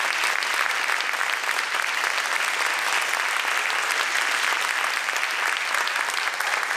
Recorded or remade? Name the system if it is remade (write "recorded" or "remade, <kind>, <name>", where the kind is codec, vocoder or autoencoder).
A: recorded